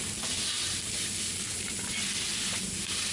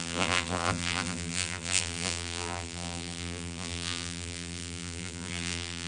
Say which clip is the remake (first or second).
second